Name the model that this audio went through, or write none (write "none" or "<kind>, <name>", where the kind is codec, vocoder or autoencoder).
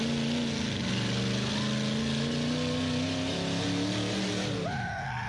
none